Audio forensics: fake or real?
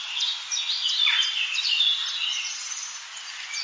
real